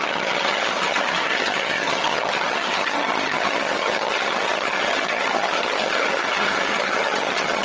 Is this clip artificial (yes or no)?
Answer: yes